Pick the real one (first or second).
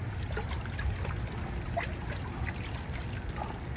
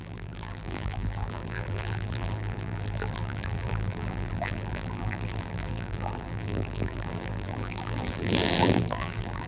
first